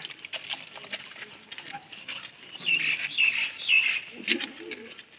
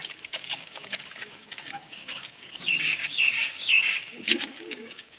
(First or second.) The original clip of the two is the first